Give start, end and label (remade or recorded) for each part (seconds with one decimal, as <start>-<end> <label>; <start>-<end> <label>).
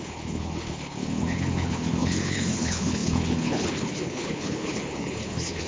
0.0-5.7 remade